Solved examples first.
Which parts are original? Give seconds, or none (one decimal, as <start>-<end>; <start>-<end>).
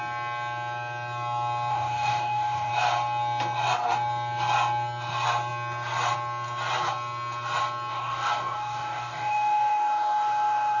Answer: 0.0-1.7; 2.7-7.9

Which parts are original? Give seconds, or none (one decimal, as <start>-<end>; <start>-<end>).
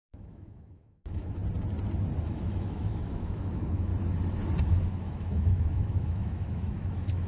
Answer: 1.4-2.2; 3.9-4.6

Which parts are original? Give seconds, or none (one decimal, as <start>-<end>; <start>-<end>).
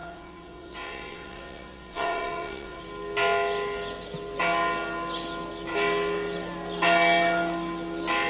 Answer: 2.8-8.3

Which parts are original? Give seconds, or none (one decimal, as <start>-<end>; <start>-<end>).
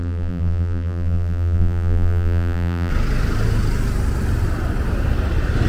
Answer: 2.9-5.7